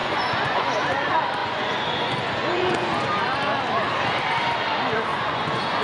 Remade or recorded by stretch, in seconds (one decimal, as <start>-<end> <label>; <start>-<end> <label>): 0.0-0.8 remade; 0.8-1.4 recorded; 1.4-3.2 remade; 3.2-5.1 recorded; 5.1-5.8 remade